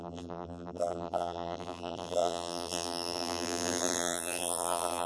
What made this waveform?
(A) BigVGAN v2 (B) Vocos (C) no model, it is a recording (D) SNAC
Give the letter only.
A